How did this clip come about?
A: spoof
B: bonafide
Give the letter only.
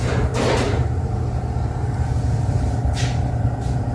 A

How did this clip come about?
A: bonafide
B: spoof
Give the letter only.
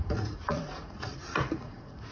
B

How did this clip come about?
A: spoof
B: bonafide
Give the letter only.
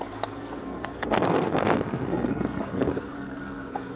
A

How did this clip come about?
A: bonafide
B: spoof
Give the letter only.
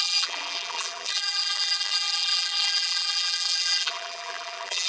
B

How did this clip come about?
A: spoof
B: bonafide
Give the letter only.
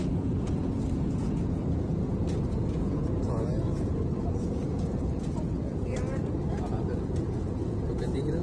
A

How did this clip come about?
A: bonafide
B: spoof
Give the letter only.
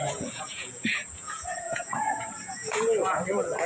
B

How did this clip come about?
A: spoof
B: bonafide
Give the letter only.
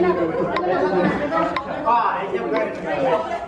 B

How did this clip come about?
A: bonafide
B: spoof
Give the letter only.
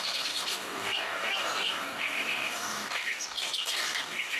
B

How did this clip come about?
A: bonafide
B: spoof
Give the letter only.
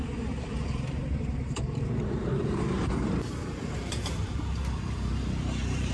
B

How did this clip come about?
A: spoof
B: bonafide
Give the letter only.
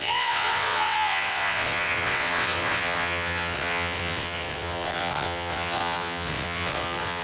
A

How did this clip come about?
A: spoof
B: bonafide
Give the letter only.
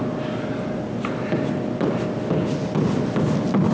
B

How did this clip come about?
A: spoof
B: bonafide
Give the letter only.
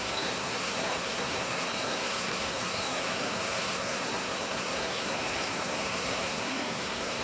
A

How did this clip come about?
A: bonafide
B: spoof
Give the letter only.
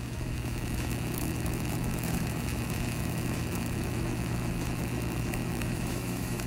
B